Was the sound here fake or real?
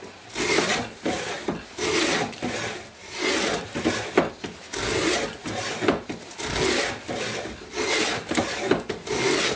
real